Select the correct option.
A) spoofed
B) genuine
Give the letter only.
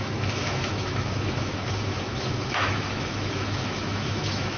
A